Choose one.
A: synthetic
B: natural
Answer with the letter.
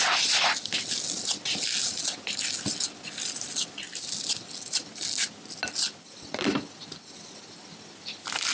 B